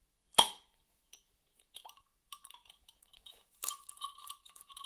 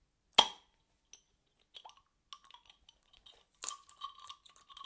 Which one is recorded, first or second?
second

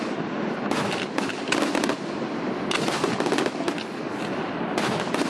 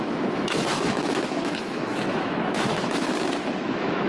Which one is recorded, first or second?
first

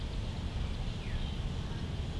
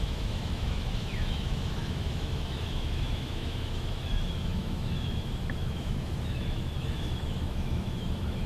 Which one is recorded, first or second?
first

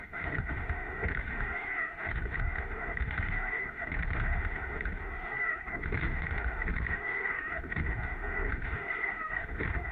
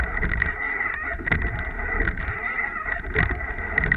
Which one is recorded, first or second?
second